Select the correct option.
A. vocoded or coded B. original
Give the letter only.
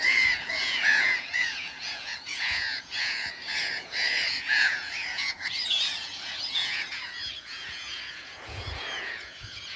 A